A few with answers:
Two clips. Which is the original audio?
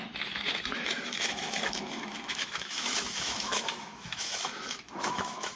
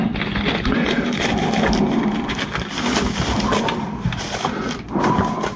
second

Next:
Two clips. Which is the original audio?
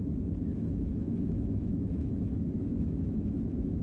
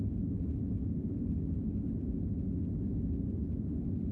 second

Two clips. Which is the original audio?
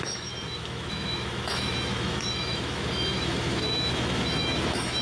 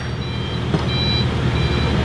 second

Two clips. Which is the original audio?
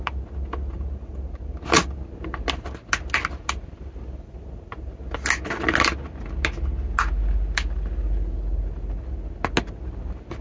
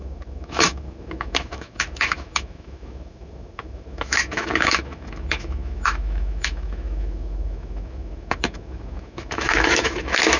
first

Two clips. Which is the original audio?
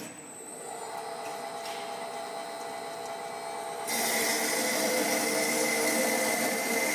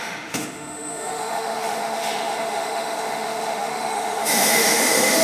first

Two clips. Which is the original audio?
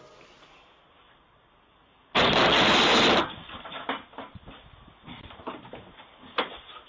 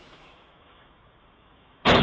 first